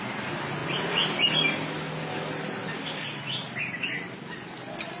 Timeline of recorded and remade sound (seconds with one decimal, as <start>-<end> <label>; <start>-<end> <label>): 0.0-5.0 recorded